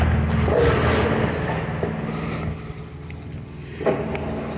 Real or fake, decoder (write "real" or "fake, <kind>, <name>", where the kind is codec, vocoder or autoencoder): real